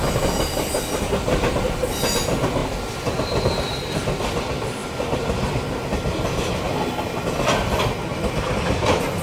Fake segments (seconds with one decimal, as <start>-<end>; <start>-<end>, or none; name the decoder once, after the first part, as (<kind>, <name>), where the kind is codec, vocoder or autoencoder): none